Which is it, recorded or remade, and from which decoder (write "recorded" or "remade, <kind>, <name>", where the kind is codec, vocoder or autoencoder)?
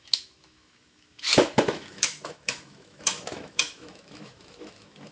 remade, autoencoder, DAC-VAE